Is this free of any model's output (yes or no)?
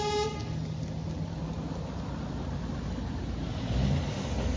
yes